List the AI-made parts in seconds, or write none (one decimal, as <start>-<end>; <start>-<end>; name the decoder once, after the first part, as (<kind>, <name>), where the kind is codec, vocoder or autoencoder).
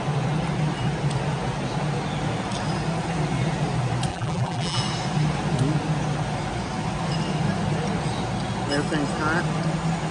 4.1-4.8 (vocoder, BigVGAN v2)